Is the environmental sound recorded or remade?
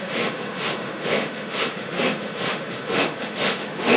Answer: remade